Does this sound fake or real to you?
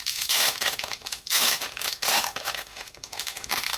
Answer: fake